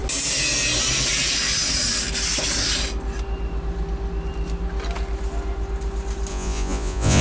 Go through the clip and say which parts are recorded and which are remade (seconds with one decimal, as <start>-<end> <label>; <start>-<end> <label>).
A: 0.0-6.3 recorded; 6.3-7.2 remade